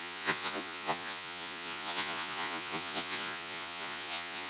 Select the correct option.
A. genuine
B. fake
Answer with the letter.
B